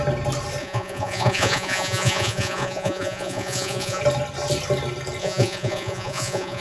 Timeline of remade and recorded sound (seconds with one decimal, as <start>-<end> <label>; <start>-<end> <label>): 0.0-0.6 recorded; 0.6-4.0 remade; 4.0-5.2 recorded; 5.2-6.6 remade